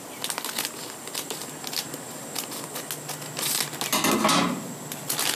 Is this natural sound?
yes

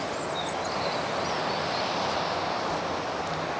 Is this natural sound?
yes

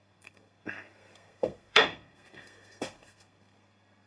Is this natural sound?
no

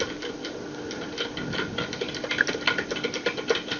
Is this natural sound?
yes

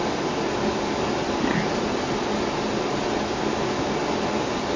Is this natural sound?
yes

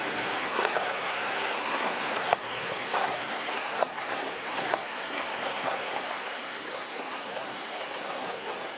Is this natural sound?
no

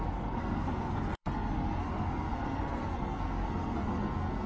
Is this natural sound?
no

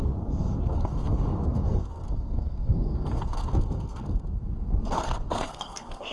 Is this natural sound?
no